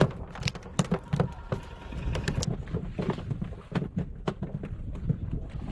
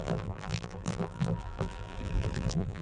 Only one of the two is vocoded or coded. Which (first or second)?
second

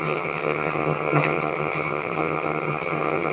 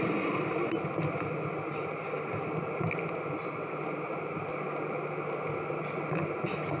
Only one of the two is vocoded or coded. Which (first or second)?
first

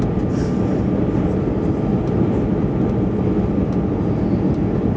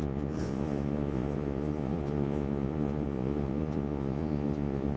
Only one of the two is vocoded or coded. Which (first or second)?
second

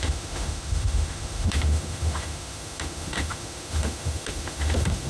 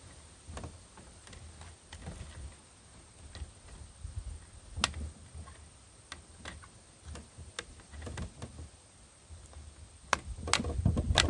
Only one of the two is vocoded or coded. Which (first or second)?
first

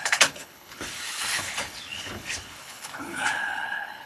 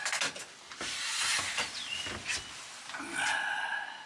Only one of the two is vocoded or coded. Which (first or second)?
first